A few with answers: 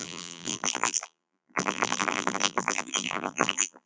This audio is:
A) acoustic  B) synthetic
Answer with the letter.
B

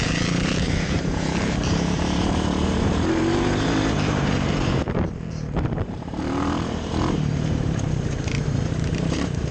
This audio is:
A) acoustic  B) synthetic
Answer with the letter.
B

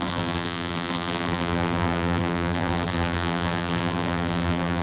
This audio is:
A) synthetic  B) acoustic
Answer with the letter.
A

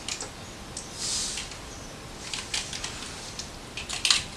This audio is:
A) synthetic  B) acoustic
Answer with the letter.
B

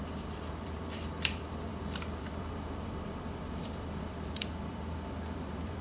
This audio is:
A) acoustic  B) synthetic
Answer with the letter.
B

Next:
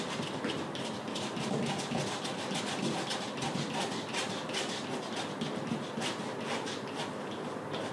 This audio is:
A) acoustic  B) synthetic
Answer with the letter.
A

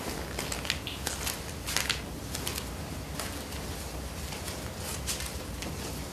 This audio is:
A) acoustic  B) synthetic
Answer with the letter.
A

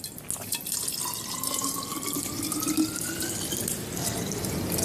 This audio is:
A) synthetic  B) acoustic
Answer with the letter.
B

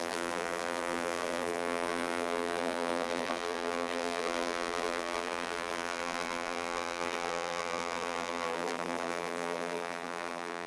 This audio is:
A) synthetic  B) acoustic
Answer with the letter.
A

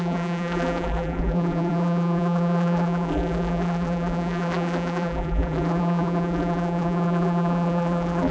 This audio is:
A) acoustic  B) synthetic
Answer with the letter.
B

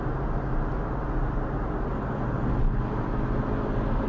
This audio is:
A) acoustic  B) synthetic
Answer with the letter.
A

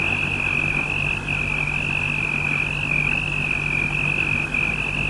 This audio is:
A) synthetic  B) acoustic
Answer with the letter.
B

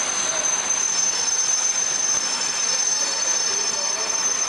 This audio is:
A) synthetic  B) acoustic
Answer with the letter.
B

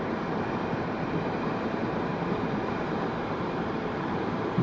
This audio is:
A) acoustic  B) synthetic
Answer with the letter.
B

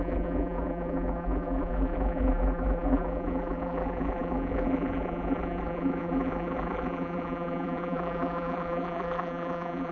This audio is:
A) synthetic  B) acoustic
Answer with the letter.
A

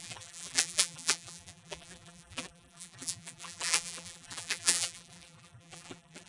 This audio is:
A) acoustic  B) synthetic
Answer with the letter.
B